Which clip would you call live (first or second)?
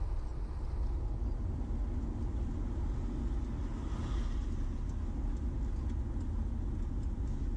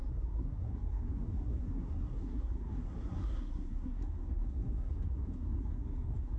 first